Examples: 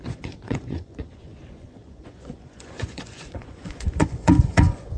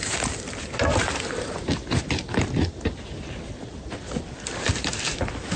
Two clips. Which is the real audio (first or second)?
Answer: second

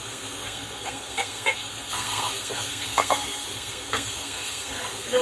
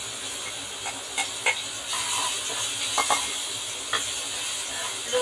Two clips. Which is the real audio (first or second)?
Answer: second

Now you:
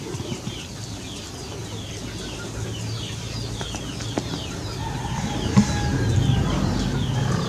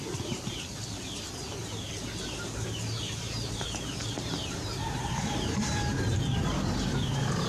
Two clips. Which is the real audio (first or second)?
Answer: first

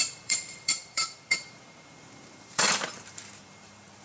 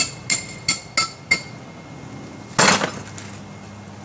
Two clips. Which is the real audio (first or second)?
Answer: second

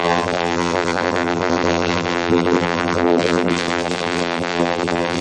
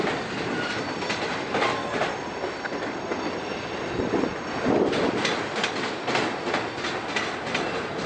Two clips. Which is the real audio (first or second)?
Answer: second